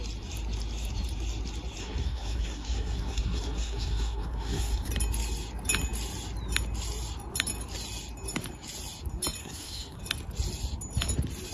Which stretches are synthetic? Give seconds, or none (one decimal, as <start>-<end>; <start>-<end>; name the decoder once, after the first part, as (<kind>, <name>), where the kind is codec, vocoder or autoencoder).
1.8-4.9 (codec, SNAC); 9.4-10.0